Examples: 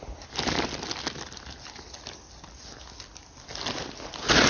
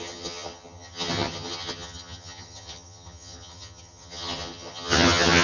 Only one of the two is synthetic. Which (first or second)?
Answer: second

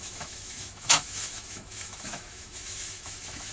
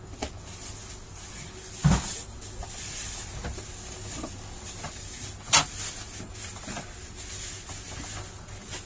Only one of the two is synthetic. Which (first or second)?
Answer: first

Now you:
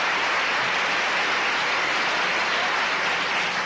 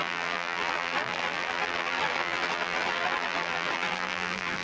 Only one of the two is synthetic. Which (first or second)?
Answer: second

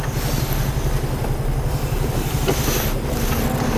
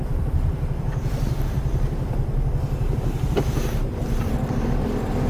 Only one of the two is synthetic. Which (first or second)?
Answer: second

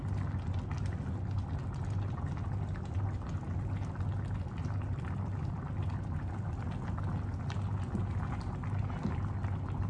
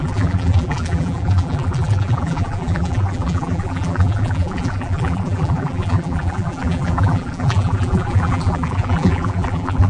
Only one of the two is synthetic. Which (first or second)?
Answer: second